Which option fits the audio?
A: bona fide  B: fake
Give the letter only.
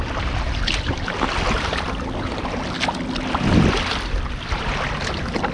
A